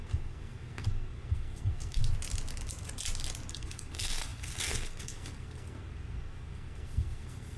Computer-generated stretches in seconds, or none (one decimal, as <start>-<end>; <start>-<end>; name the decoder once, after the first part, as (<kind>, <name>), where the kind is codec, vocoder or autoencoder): 0.0-2.0 (codec, SNAC); 3.5-7.6